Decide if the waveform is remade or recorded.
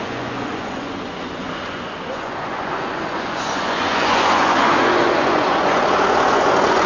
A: remade